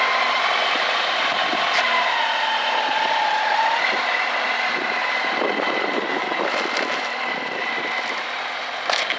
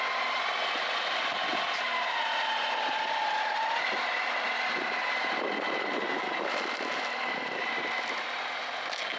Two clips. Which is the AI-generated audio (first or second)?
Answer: first